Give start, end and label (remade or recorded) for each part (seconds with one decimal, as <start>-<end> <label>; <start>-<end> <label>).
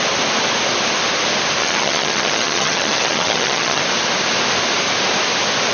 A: 0.0-1.6 recorded; 1.6-3.8 remade; 3.8-5.7 recorded